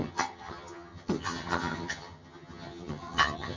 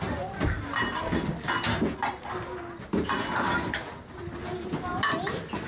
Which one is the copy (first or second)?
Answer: first